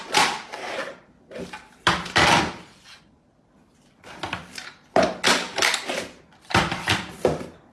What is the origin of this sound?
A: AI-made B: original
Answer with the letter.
B